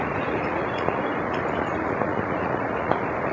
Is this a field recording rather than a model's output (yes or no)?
no